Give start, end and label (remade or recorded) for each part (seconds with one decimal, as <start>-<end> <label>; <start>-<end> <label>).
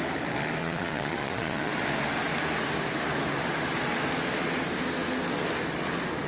0.0-0.6 recorded; 0.6-1.7 remade; 1.7-6.3 recorded